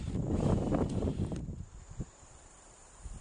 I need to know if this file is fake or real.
fake